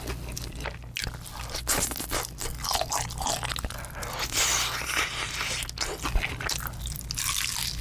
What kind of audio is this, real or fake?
real